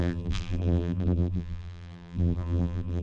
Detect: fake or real fake